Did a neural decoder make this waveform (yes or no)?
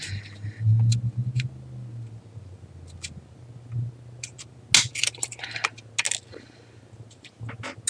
no